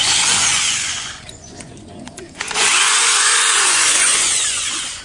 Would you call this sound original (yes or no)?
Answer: no